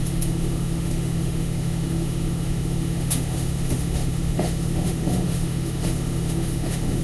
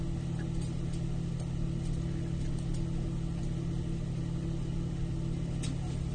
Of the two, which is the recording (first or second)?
second